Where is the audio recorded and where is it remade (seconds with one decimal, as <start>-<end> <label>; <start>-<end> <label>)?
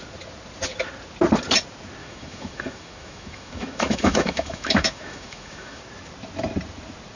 0.0-2.0 recorded; 2.0-5.8 remade; 5.8-7.2 recorded